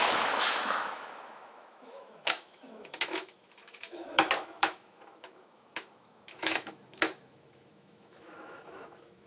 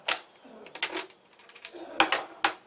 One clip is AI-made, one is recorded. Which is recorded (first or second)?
second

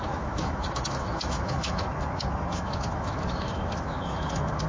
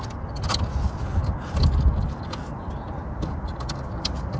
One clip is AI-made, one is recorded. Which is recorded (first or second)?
second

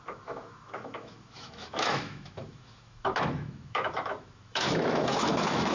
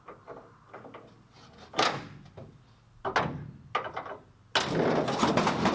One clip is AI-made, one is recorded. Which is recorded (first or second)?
second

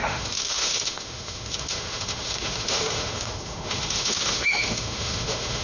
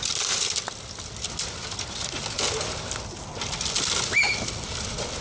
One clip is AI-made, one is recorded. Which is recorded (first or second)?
second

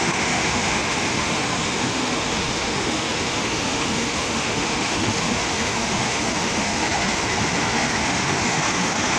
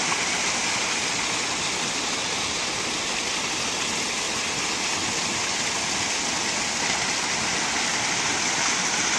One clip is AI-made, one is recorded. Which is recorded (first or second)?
second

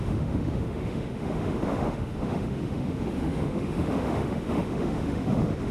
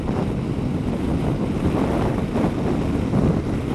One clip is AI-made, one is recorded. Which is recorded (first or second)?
second